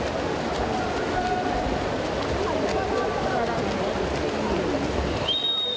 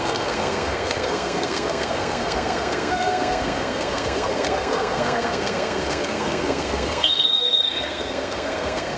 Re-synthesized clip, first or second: second